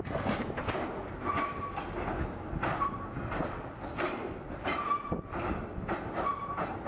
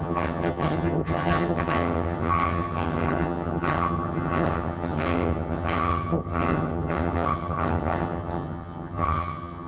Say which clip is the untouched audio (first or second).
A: first